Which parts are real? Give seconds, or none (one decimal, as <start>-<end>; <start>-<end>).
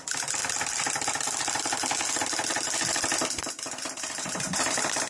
0.4-3.5